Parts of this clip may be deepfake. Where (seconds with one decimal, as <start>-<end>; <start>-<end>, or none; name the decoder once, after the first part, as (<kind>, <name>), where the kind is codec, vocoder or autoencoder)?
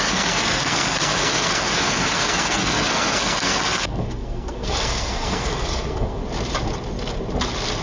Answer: 0.0-6.2 (codec, SNAC)